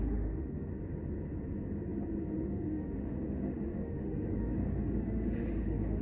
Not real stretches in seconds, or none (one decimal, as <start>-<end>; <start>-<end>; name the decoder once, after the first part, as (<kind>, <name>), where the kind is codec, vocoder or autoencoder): 0.0-0.7 (autoencoder, DAC-VAE); 2.2-6.0